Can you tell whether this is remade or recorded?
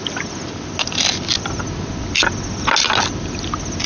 recorded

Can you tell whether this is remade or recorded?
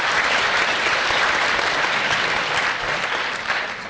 recorded